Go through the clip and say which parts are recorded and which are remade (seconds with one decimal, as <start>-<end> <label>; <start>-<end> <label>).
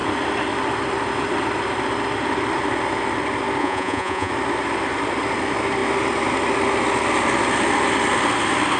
0.0-3.6 recorded; 3.6-4.3 remade; 4.3-8.8 recorded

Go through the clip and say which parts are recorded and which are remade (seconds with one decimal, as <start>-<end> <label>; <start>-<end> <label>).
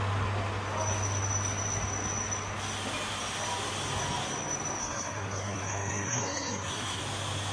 0.0-4.8 recorded; 4.8-7.0 remade; 7.0-7.5 recorded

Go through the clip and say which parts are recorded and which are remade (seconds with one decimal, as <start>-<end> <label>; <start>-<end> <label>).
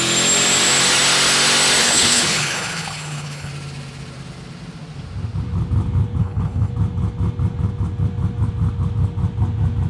0.0-1.8 recorded; 1.8-3.5 remade; 3.5-6.2 recorded; 6.2-6.7 remade; 6.7-9.9 recorded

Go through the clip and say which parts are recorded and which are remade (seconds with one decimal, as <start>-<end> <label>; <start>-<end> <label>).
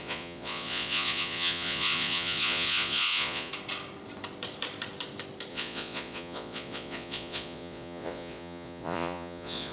0.0-3.5 remade; 3.5-5.5 recorded; 5.5-9.7 remade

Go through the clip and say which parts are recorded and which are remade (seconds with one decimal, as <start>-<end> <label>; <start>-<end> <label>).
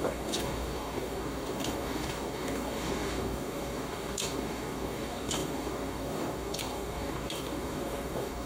0.0-8.5 remade